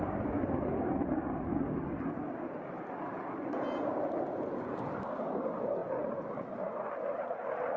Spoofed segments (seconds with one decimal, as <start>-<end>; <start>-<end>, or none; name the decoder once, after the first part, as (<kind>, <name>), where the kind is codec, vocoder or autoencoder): none